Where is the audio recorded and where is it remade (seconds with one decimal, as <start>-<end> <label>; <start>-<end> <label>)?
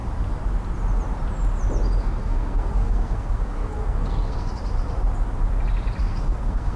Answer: 0.0-2.0 recorded; 2.0-4.5 remade; 4.5-6.0 recorded; 6.0-6.8 remade